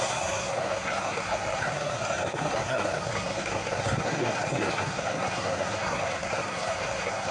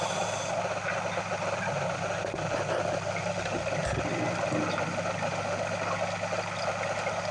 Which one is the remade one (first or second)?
first